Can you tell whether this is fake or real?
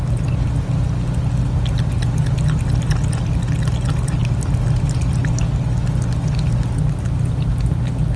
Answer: real